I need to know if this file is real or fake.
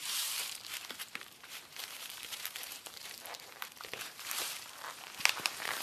fake